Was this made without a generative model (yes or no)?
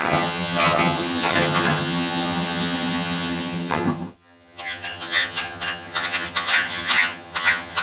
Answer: no